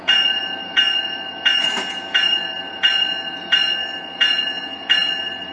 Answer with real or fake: fake